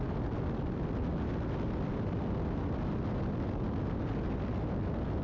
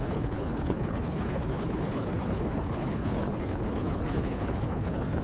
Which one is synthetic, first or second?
second